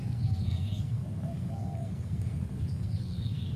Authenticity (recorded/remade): remade